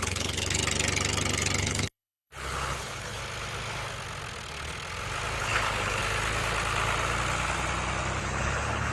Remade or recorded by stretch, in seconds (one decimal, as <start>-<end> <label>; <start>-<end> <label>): 0.0-0.6 remade; 0.6-1.6 recorded; 1.6-3.2 remade; 3.2-5.4 recorded; 5.4-6.0 remade; 6.0-8.2 recorded; 8.2-8.9 remade